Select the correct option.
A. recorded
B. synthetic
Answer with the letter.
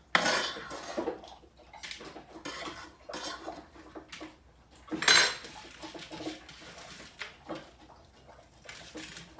A